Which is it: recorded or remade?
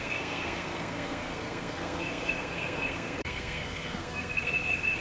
remade